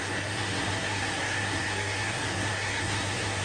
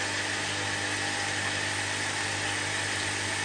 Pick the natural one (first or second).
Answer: second